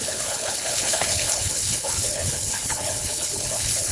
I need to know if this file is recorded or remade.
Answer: remade